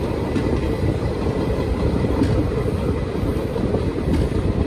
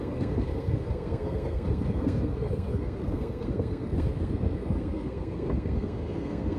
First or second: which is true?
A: first